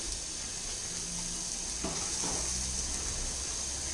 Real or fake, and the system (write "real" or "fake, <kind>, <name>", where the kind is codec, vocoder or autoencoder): real